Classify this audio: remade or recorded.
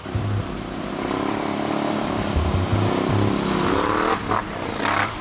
remade